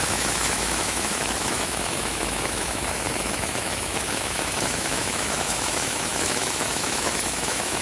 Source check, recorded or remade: remade